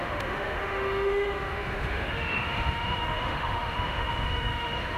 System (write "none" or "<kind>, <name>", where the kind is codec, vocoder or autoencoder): autoencoder, DAC-VAE